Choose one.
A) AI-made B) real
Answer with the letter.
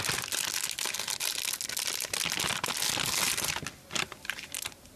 B